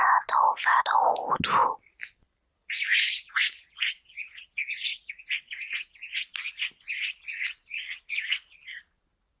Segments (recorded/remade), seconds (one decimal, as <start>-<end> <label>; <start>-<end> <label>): 0.0-9.4 recorded